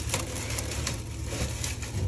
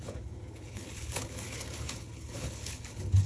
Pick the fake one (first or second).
second